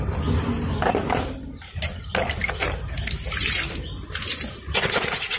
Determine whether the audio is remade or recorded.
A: recorded